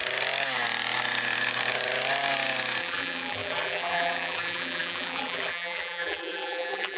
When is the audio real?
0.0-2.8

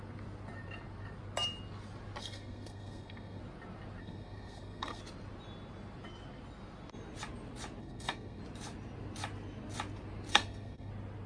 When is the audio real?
0.0-2.2; 3.4-4.0; 5.0-7.8; 8.4-10.3; 10.9-11.3

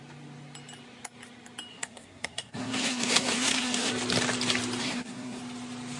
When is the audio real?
0.0-1.7; 3.9-4.8; 5.4-6.0

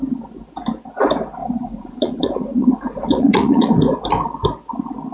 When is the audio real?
0.0-1.4; 3.8-5.1